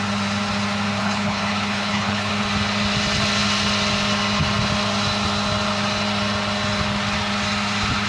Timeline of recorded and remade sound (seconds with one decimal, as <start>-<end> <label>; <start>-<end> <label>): 0.0-1.0 recorded; 1.0-2.3 remade; 2.3-8.1 recorded